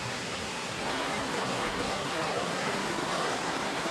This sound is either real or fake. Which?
fake